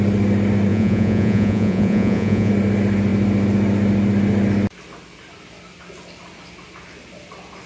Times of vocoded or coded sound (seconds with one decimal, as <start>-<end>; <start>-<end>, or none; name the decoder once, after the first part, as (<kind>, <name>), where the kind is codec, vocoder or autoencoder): 0.7-2.5 (vocoder, Vocos)